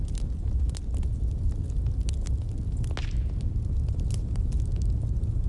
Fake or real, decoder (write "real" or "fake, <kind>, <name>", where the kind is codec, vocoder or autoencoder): real